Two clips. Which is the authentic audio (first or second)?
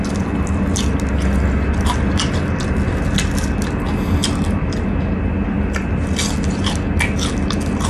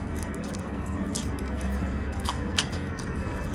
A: first